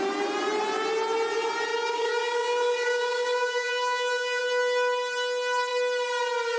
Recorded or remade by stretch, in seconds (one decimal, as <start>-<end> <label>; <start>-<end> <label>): 0.0-1.7 recorded; 1.7-4.4 remade; 4.4-6.6 recorded